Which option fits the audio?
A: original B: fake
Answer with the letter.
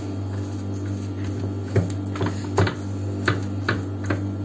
A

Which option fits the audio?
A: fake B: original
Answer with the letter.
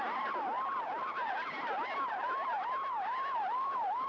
A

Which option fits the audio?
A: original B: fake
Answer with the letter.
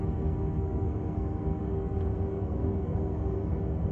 B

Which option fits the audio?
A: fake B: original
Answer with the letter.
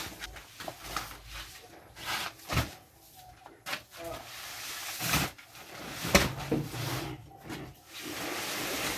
B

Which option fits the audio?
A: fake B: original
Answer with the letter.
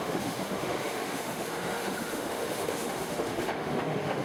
A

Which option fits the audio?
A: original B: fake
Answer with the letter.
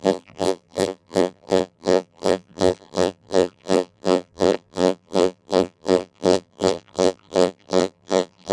B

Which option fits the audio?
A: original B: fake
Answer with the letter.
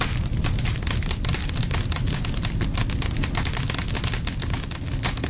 A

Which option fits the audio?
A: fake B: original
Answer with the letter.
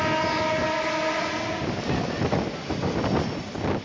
B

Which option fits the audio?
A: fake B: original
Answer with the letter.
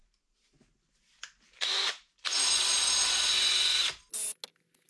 B